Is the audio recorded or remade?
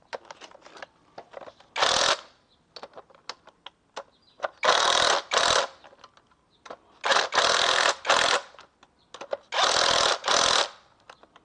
recorded